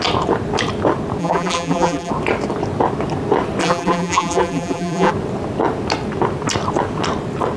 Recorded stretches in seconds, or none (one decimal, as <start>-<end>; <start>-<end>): 0.0-1.2; 2.1-3.6; 5.1-7.6